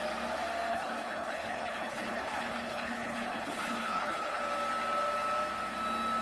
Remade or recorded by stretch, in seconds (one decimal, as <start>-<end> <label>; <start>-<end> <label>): 0.0-0.7 recorded; 0.7-4.4 remade; 4.4-6.2 recorded